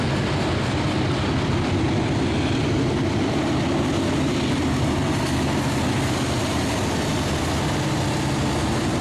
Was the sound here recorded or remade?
recorded